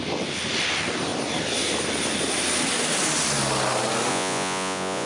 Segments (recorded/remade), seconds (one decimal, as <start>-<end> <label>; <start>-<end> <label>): 0.0-4.1 recorded; 4.1-5.1 remade